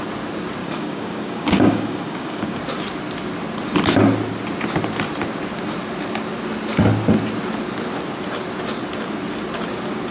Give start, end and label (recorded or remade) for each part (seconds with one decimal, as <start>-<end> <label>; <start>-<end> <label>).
0.0-0.6 recorded; 0.6-2.6 remade; 2.6-10.1 recorded